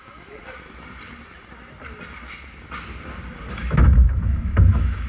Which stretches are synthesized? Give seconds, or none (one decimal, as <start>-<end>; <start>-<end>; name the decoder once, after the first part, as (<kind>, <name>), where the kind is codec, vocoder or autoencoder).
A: 0.0-0.4 (autoencoder, DAC-VAE); 3.5-5.1